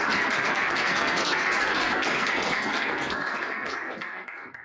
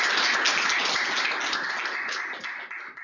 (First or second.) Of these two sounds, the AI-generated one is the first